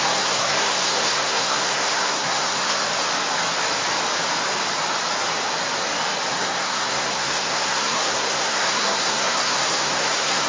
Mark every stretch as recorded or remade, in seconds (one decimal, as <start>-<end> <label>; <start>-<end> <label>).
0.0-2.8 remade; 2.8-6.3 recorded; 6.3-10.5 remade